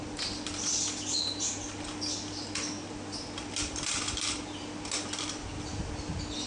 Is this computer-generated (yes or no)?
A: no